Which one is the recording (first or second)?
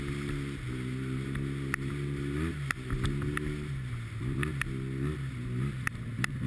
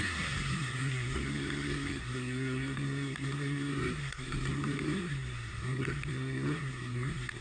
first